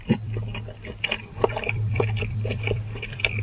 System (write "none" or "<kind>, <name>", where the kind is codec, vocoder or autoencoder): vocoder, BigVGAN v2